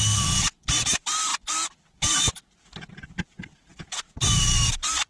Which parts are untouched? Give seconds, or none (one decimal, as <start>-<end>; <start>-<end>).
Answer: 0.0-5.1